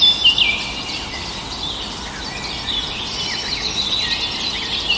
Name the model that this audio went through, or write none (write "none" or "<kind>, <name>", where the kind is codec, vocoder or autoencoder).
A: none